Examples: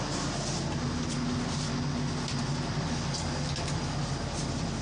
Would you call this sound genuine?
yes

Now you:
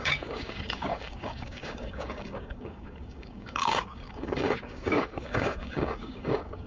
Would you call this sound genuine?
no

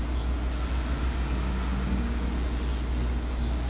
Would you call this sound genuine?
yes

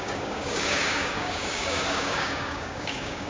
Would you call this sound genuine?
no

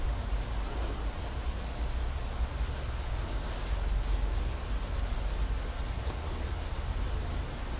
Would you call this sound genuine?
yes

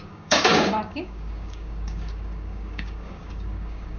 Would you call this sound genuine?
no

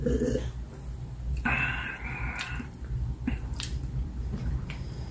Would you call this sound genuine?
yes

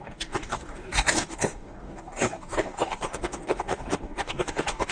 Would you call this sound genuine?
no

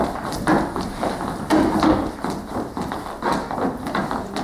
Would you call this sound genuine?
yes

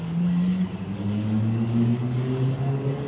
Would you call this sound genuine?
no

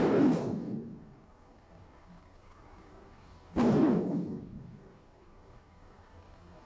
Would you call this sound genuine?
no